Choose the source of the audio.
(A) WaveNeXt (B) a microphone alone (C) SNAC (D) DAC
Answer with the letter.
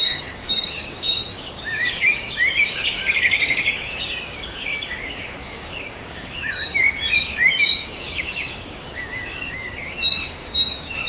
D